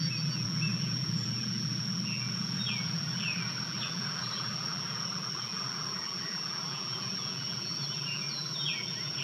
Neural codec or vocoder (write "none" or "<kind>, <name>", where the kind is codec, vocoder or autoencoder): vocoder, BigVGAN v2